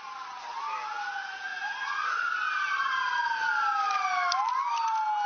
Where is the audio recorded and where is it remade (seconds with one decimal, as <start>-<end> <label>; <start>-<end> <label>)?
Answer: 0.0-5.3 recorded